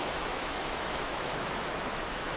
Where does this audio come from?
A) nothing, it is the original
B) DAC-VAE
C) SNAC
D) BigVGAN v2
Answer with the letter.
B